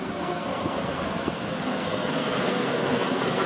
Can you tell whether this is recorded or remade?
remade